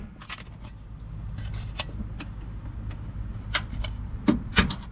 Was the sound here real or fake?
real